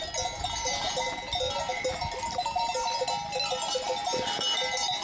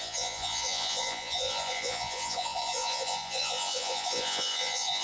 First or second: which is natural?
first